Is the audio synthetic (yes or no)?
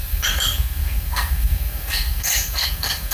yes